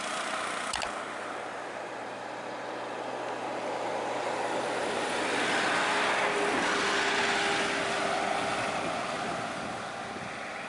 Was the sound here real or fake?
real